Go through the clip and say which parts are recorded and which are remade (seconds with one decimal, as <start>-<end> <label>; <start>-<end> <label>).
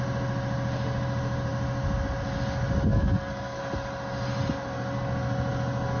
0.0-2.9 recorded; 2.9-3.6 remade; 3.6-6.0 recorded